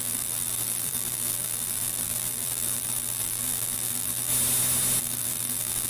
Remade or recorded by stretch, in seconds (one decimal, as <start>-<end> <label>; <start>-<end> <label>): 0.0-4.3 remade; 4.3-5.0 recorded; 5.0-5.9 remade